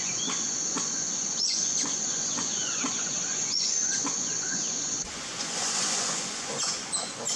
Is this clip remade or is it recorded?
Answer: remade